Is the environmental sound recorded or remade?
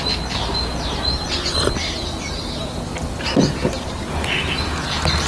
recorded